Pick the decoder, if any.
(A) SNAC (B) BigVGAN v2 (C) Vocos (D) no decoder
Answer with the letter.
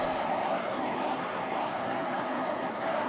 A